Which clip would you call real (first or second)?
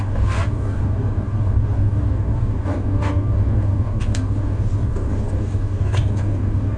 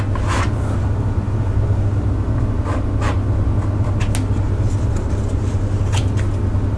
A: second